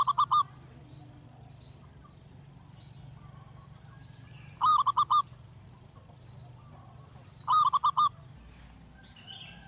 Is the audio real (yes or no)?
yes